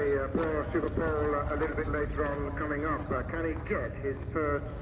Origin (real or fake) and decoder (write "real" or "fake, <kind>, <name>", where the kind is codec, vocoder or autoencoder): real